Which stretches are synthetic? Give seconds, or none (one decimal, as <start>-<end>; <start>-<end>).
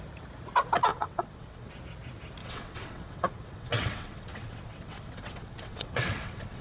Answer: 0.9-1.7; 2.4-6.6